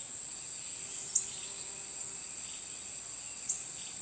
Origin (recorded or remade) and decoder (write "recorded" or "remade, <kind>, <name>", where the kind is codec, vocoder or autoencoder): recorded